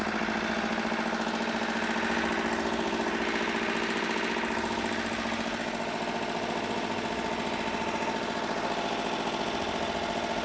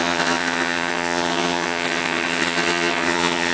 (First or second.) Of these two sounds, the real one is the first